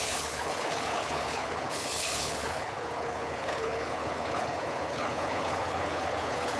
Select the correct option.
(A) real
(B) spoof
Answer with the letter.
B